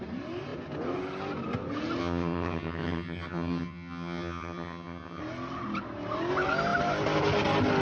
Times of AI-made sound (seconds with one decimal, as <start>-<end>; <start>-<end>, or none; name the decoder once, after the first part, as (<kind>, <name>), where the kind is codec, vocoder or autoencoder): 2.0-5.2 (vocoder, HiFi-GAN)